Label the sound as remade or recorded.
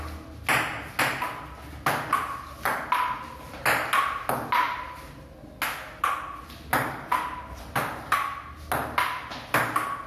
recorded